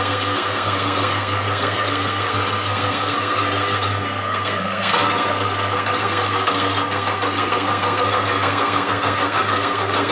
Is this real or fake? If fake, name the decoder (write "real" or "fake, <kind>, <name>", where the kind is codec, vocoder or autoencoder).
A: fake, codec, SNAC